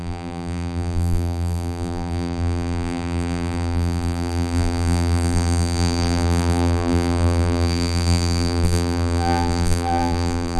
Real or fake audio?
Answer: fake